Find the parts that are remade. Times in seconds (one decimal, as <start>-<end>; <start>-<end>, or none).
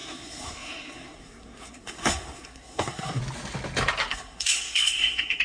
0.0-3.2; 4.1-5.4